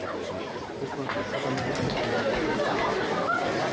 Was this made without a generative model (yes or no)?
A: yes